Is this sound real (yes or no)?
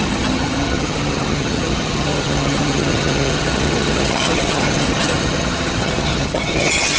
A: no